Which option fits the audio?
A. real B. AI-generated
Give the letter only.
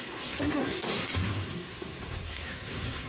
B